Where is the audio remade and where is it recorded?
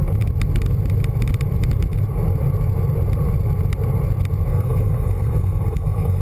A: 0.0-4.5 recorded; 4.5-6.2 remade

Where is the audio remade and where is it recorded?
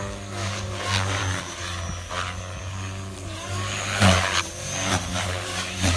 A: 0.0-1.2 remade; 1.2-2.6 recorded; 2.6-6.0 remade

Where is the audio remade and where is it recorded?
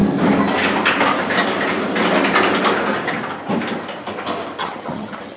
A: 0.0-4.6 recorded; 4.6-5.4 remade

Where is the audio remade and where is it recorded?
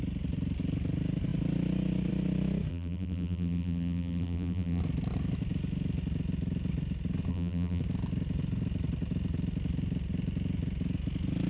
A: 0.0-2.7 recorded; 2.7-4.8 remade; 4.8-7.3 recorded; 7.3-7.8 remade; 7.8-11.5 recorded